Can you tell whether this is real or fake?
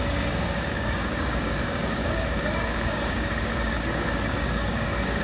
fake